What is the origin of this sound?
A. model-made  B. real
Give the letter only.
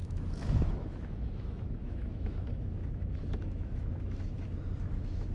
A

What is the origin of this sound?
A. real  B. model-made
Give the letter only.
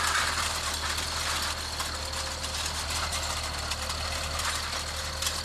A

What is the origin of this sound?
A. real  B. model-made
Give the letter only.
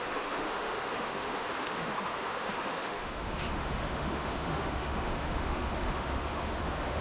B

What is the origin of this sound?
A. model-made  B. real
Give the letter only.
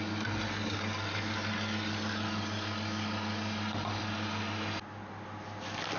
B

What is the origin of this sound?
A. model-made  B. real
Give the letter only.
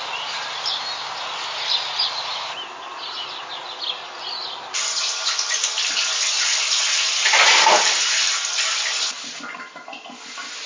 B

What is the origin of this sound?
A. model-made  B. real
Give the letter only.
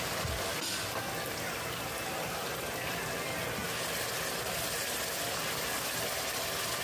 B